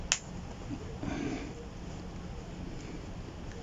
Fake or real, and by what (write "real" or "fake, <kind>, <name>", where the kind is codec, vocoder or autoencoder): real